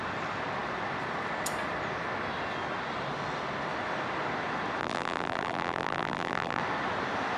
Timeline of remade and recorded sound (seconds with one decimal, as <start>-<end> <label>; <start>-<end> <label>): 0.0-4.8 recorded; 4.8-6.6 remade; 6.6-7.4 recorded